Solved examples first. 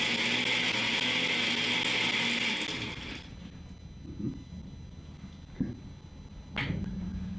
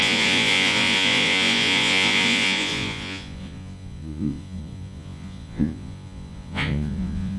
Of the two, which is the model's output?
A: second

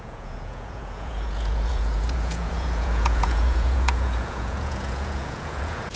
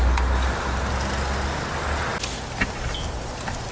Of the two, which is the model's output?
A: first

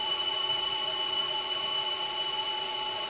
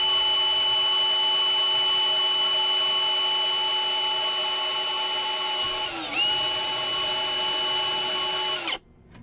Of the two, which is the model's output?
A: first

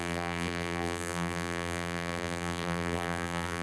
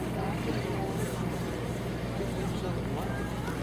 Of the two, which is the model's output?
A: first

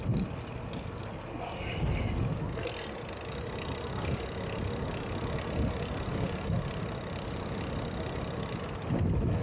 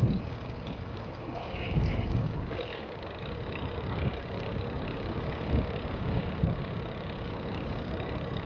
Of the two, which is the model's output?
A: second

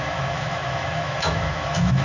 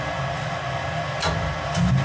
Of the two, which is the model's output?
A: first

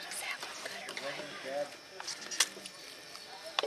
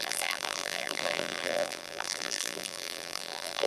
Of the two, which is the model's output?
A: second